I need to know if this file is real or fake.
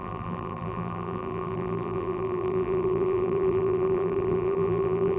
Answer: fake